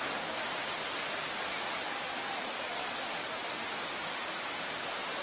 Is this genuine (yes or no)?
yes